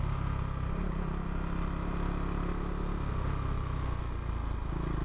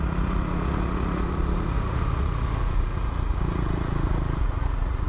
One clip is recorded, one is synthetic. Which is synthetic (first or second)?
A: second